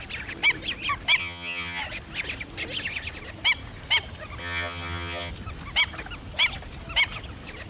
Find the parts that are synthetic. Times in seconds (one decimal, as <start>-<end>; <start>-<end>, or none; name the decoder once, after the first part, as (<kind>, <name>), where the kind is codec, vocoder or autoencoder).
1.2-1.8 (vocoder, HiFi-GAN); 4.4-5.3